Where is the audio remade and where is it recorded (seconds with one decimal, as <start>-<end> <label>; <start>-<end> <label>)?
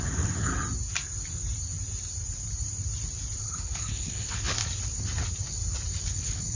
0.0-0.5 remade; 0.5-3.4 recorded; 3.4-4.6 remade; 4.6-6.1 recorded; 6.1-6.5 remade